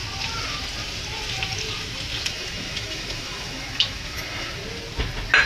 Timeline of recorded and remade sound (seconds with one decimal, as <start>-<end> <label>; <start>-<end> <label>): 0.0-2.3 recorded; 2.3-4.6 remade; 4.6-5.5 recorded